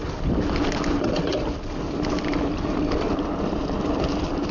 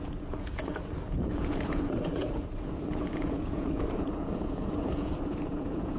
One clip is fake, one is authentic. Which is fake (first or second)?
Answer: second